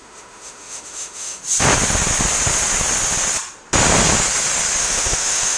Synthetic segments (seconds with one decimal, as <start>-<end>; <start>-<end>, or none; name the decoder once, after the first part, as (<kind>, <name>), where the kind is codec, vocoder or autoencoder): 0.0-1.4 (autoencoder, DAC-VAE); 4.8-5.6